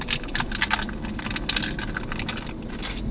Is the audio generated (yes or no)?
no